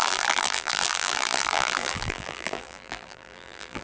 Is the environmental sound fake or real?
fake